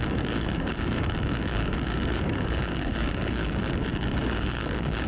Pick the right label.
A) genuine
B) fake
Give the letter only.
B